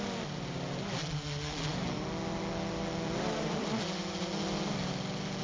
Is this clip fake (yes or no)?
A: no